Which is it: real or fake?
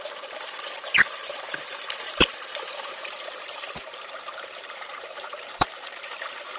fake